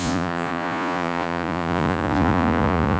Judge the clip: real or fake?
fake